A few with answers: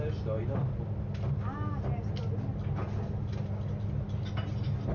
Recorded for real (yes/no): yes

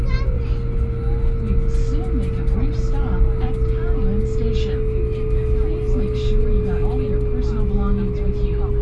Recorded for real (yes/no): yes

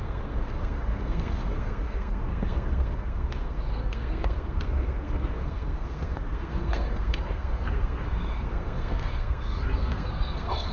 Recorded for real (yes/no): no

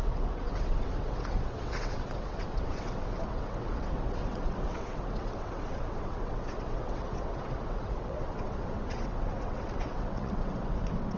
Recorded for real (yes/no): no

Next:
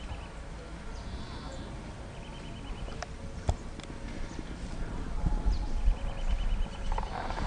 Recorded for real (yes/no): yes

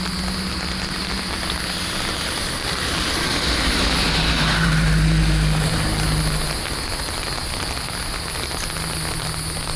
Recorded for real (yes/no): yes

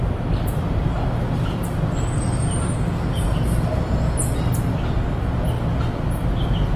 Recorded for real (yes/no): yes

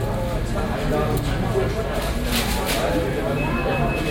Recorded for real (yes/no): yes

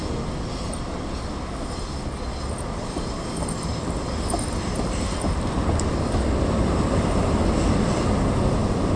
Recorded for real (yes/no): yes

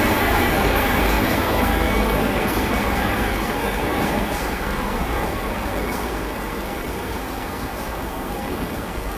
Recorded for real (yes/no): no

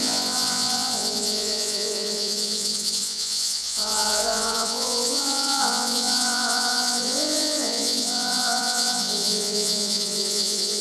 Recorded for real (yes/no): no